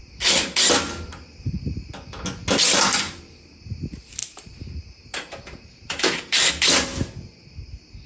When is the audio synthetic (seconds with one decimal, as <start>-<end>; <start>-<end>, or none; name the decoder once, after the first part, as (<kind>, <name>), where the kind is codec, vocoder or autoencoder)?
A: 4.2-6.5 (vocoder, BigVGAN v2)